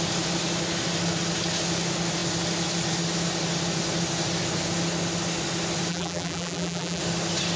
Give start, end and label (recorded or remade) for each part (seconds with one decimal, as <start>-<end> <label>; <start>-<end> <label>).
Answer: 0.0-5.9 recorded; 5.9-7.0 remade; 7.0-7.6 recorded